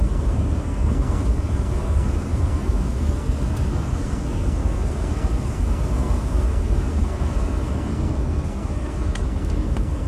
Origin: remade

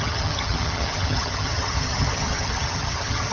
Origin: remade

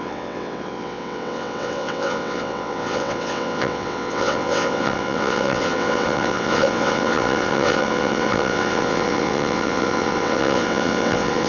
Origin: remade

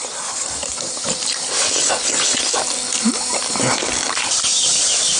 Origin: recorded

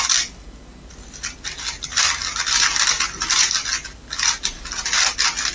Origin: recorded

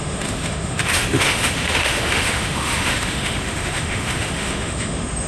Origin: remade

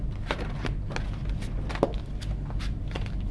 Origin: recorded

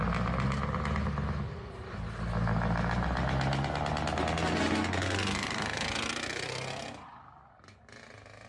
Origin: recorded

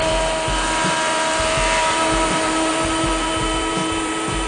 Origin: remade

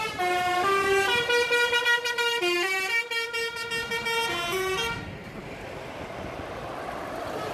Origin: recorded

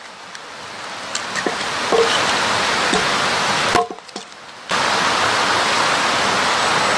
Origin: recorded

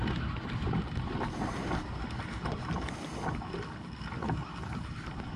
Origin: recorded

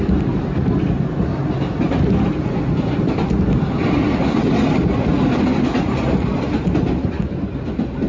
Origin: recorded